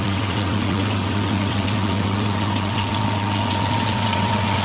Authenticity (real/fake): fake